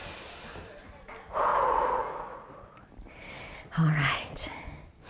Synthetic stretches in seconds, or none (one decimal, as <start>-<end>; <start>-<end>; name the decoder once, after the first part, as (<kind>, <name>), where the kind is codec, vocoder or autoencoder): 1.5-2.9 (vocoder, Vocos)